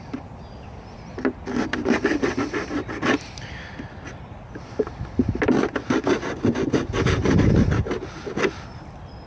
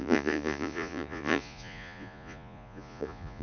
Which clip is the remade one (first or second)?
second